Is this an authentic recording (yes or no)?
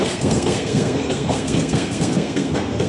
no